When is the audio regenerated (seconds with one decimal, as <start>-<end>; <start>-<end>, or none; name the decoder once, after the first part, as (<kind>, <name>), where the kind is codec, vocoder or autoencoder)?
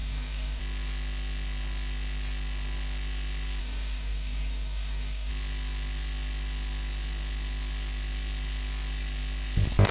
0.0-0.6 (codec, DAC); 3.6-5.3